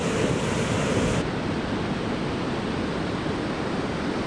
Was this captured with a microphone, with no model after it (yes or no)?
yes